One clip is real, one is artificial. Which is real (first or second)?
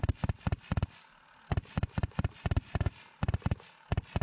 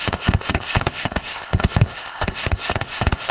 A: first